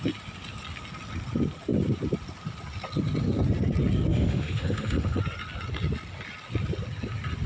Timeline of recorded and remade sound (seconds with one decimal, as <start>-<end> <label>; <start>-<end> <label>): 0.0-4.1 recorded; 4.1-5.2 remade; 5.2-7.5 recorded